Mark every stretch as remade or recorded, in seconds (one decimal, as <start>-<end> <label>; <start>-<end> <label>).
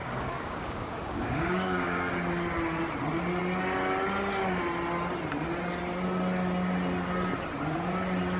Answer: 0.0-2.1 remade; 2.1-8.4 recorded